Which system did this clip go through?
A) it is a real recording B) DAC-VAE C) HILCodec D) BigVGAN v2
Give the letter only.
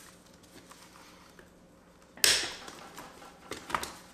A